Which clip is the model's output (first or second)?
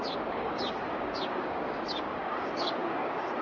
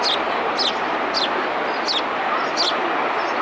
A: first